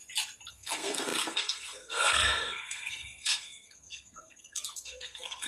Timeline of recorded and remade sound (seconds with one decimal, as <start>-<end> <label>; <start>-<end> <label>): 0.0-0.5 recorded; 0.5-5.5 remade